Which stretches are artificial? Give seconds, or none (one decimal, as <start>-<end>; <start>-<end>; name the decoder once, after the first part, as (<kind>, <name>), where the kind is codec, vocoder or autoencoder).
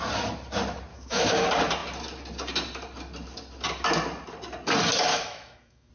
0.9-1.4 (autoencoder, DAC-VAE); 5.1-5.9